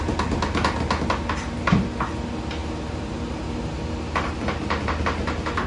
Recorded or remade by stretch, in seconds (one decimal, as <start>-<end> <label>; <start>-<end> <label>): 0.0-5.7 recorded